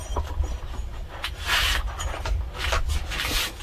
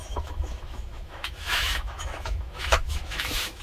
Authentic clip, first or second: first